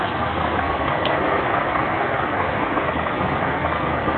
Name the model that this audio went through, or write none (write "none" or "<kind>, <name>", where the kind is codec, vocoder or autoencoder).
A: codec, SNAC